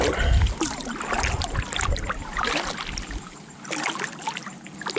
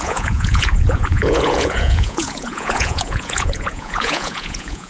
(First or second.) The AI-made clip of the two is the second